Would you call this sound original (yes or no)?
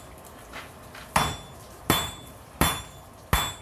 yes